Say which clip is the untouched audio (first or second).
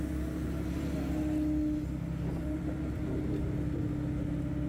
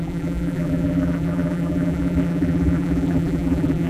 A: first